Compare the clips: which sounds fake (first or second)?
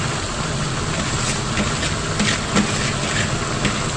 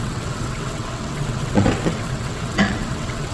second